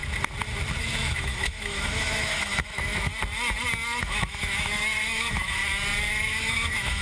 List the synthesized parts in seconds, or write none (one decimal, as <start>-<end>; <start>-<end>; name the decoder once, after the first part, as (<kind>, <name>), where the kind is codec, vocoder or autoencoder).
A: 0.8-3.1 (autoencoder, DAC-VAE); 4.0-5.6; 6.1-7.0

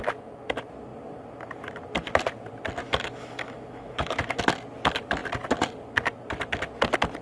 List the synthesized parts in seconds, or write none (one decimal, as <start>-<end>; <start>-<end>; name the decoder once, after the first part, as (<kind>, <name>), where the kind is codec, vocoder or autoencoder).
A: 2.8-4.4 (autoencoder, DAC-VAE)

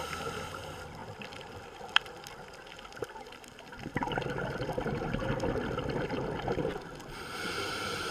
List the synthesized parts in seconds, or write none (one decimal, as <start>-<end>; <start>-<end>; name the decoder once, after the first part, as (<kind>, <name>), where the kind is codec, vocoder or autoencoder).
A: 1.0-2.2 (vocoder, BigVGAN v2)

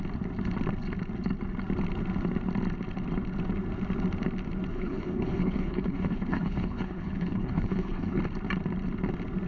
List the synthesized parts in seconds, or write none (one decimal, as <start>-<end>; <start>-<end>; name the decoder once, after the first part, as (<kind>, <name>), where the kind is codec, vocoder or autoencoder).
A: 4.7-8.2 (codec, HILCodec)

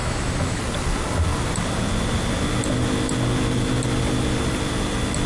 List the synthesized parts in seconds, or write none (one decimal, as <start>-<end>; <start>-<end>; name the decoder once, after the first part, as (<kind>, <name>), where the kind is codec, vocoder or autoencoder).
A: 0.0-0.6 (autoencoder, DAC-VAE)

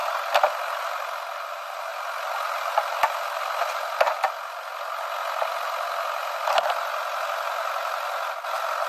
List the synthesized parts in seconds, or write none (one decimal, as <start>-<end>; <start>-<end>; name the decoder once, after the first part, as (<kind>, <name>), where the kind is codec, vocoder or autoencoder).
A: none

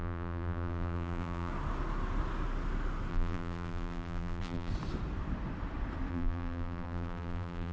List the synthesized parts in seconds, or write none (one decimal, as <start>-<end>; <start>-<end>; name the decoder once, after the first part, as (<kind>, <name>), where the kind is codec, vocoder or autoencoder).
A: 0.0-1.5 (vocoder, BigVGAN v2); 3.1-4.7; 6.1-7.7